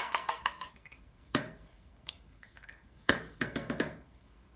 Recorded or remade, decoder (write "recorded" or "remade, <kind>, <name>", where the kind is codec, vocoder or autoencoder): remade, codec, SNAC